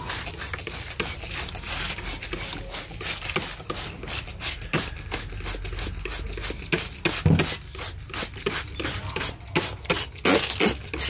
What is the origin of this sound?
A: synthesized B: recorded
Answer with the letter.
B